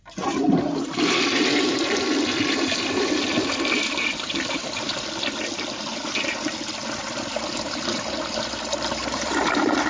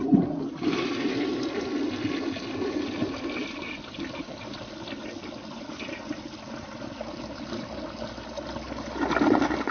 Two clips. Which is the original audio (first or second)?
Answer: second